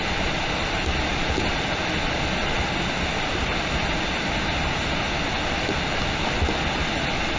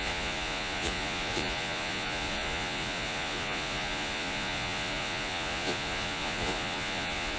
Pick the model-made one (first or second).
second